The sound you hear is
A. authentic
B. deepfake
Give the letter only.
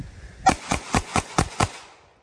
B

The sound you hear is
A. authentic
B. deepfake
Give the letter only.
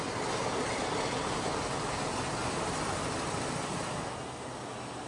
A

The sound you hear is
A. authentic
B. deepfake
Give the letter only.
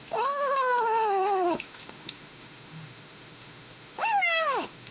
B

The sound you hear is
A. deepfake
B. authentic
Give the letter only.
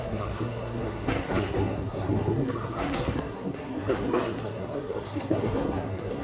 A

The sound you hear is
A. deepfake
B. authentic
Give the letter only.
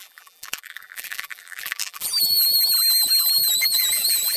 A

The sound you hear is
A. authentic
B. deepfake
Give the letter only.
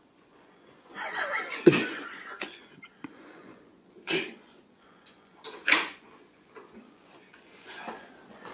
B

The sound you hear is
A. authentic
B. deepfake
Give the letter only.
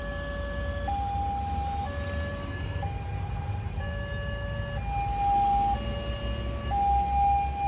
A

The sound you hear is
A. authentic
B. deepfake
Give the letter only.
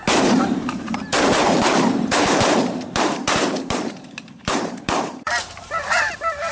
B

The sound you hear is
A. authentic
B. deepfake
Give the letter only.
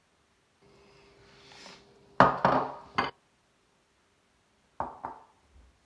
A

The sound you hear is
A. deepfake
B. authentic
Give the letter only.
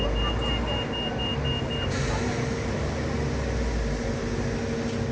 B